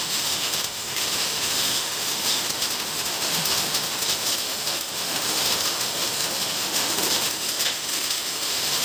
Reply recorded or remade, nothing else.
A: remade